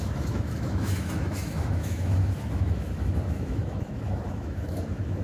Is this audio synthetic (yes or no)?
yes